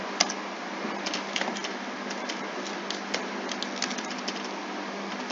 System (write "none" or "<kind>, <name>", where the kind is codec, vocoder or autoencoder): none